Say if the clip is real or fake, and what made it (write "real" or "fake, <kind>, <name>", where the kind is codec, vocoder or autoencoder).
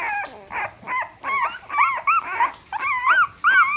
real